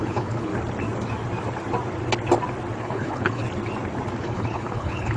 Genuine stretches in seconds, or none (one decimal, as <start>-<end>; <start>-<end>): 0.5-2.8; 3.4-4.2